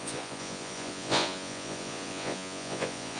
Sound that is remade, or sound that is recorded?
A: remade